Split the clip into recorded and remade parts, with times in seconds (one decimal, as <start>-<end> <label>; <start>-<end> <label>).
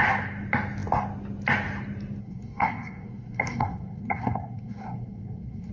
0.0-2.2 recorded; 2.2-5.7 remade